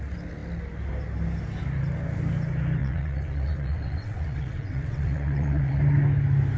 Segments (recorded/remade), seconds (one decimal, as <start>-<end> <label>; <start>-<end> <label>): 0.0-2.8 recorded; 2.8-5.8 remade; 5.8-6.6 recorded